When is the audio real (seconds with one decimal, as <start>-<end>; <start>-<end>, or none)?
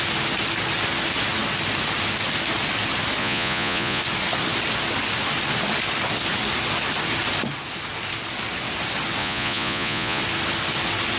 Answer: 0.0-3.2; 4.0-9.2; 10.2-11.2